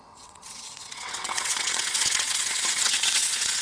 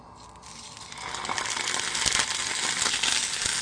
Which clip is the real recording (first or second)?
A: second